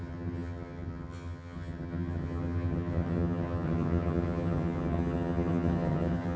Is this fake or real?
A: fake